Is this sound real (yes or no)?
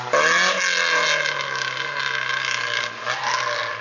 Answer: yes